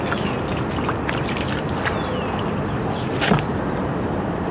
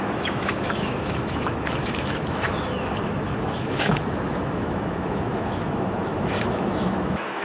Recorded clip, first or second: first